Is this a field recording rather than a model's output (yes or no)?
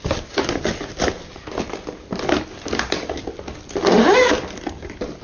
yes